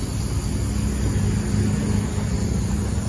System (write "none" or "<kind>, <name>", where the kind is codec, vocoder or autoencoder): none